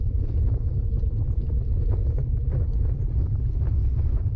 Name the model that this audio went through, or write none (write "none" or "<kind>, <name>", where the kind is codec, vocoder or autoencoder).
vocoder, BigVGAN v2